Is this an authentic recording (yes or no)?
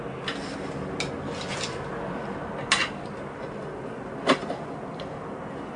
yes